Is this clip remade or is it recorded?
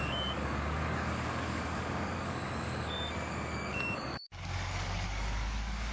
remade